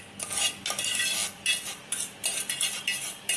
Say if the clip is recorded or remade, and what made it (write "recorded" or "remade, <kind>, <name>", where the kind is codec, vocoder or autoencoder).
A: recorded